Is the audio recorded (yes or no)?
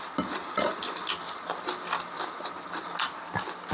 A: yes